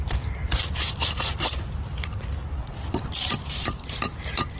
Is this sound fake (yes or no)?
yes